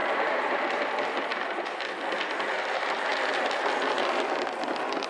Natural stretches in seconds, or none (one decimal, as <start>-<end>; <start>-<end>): 0.6-1.3; 1.9-5.1